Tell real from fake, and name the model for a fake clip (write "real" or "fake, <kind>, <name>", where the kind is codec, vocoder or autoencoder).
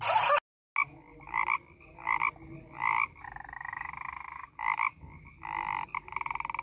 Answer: real